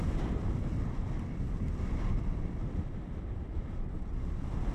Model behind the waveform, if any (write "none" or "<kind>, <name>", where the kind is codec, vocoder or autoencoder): vocoder, BigVGAN v2